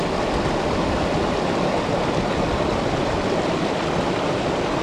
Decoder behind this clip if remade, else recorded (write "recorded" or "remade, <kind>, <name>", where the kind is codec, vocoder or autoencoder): recorded